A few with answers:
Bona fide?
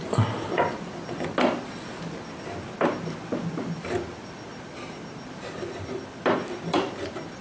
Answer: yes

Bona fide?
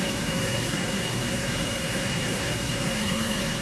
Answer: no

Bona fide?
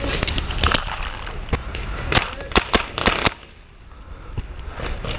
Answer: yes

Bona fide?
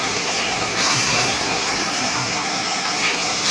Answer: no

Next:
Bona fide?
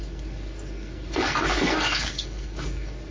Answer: no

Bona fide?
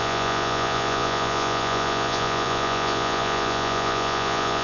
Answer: no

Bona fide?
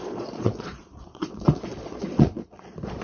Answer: no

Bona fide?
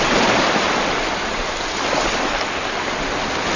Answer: yes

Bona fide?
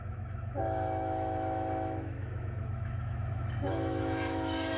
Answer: no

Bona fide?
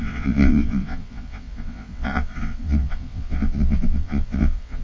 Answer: no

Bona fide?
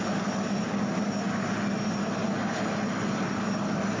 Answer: yes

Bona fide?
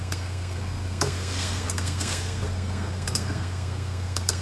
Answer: no